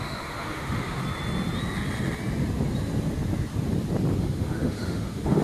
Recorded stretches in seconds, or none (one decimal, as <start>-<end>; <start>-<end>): 1.0-4.2